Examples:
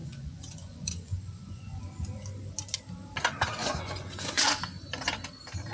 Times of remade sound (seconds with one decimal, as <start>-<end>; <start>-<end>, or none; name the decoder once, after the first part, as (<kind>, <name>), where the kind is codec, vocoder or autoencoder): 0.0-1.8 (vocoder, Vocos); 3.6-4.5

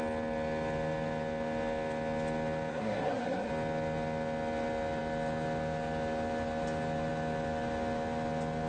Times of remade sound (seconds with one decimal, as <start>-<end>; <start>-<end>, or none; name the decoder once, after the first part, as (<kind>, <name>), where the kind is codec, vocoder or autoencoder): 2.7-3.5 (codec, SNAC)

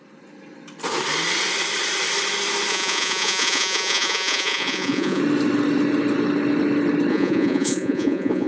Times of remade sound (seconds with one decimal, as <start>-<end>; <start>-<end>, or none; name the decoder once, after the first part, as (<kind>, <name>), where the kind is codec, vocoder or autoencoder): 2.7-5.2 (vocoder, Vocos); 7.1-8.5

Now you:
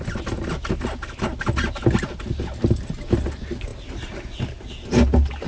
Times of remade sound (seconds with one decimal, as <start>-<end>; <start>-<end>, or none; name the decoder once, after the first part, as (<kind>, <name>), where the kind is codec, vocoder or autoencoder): none